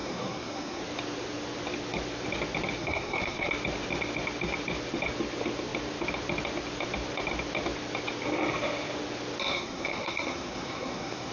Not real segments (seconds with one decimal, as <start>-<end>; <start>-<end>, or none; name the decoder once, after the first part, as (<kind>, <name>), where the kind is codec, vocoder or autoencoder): 0.0-0.8 (codec, SNAC); 2.8-3.5; 9.5-11.3

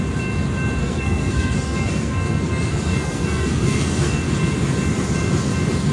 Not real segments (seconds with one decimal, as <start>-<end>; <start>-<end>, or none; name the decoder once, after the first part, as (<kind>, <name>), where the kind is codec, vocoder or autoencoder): 0.8-4.2 (codec, SNAC)

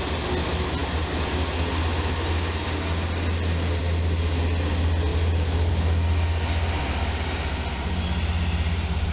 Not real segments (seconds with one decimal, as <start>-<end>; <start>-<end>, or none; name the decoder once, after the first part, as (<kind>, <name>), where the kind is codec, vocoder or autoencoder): none

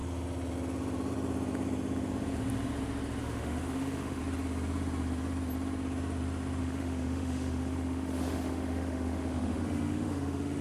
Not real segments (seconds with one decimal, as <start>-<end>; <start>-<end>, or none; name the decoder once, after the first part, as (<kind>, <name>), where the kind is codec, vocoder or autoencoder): 3.2-4.2 (autoencoder, DAC-VAE); 6.6-10.6

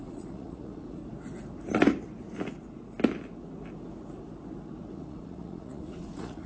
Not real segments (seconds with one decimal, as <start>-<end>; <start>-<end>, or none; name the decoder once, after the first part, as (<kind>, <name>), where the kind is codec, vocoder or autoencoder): 0.0-1.0 (vocoder, Vocos); 4.9-6.5